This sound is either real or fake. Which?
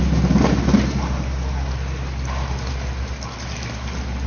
real